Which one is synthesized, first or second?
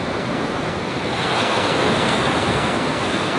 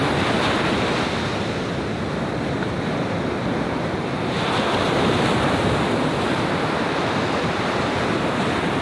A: first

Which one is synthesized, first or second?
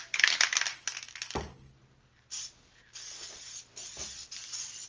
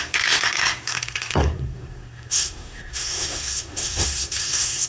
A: second